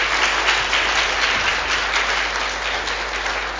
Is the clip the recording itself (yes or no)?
yes